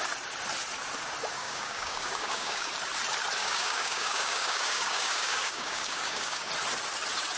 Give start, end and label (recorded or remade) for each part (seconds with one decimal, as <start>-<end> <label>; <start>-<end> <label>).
0.0-1.4 recorded; 1.4-2.7 remade; 2.7-3.4 recorded; 3.4-6.5 remade; 6.5-7.4 recorded